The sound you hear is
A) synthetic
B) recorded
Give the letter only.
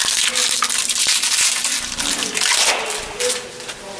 B